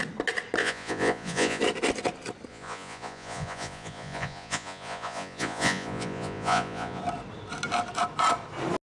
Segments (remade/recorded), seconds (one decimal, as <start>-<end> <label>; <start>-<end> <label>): 0.0-0.6 recorded; 0.6-1.6 remade; 1.6-2.5 recorded; 2.5-7.0 remade; 7.0-8.9 recorded